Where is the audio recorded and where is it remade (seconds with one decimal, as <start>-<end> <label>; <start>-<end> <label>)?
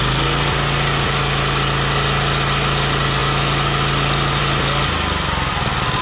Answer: 0.0-6.0 recorded